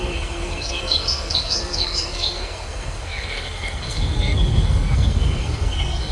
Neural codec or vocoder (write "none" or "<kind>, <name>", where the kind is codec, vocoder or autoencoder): codec, SNAC